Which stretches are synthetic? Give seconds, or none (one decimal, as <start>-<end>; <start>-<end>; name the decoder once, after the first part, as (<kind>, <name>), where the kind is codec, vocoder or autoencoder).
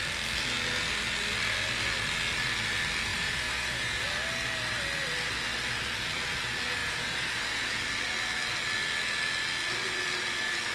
3.1-4.0 (vocoder, Vocos); 6.8-7.8